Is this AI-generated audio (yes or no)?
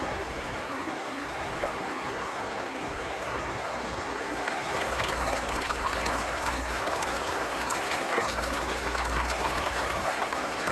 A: yes